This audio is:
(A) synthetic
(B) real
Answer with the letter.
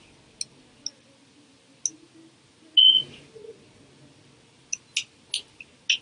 B